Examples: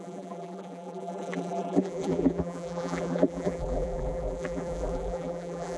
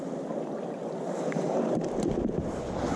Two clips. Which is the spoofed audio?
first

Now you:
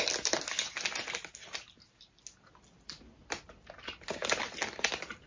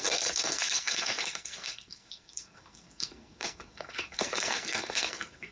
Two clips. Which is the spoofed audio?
second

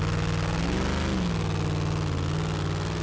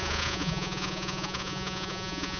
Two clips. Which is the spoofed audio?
second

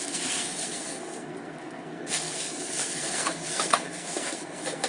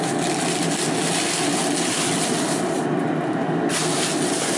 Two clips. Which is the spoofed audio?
first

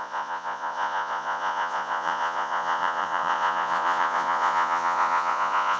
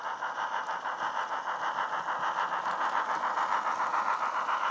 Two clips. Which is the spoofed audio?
first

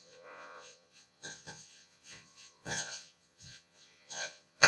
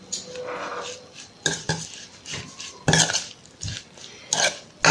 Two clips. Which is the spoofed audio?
first